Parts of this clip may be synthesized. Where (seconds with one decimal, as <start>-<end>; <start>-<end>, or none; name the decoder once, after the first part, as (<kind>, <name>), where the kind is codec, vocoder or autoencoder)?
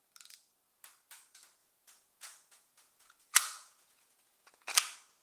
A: 1.6-4.7 (vocoder, Vocos)